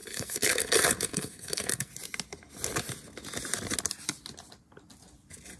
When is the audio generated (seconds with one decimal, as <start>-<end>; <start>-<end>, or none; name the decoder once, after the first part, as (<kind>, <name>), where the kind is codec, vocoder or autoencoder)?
0.0-1.9 (codec, SNAC)